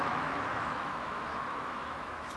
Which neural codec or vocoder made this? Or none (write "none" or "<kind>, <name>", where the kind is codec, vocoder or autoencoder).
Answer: autoencoder, DAC-VAE